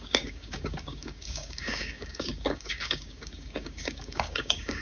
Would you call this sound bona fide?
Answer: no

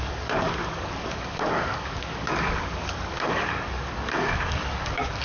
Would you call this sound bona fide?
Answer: no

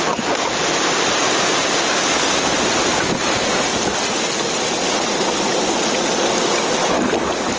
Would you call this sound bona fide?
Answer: yes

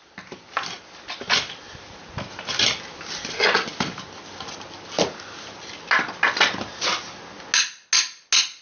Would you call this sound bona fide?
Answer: yes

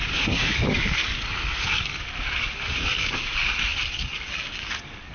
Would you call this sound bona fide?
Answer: no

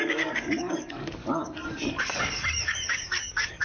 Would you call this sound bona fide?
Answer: no